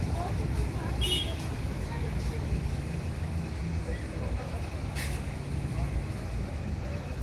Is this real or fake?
fake